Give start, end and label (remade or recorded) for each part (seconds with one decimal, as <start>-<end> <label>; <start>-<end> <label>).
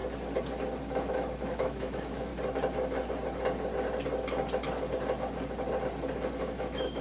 0.0-0.8 recorded; 0.8-2.3 remade; 2.3-6.4 recorded; 6.4-7.0 remade